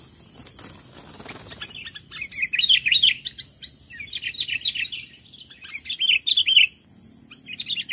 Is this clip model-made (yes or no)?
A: no